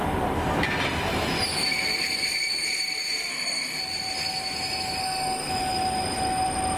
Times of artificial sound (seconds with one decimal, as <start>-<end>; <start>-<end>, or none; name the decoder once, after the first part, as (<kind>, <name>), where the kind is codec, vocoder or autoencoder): 3.3-3.8 (autoencoder, DAC-VAE); 5.0-5.5